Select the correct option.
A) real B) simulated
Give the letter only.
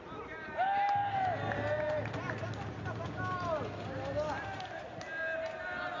A